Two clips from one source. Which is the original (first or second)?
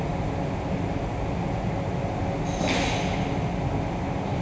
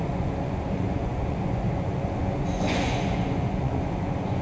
first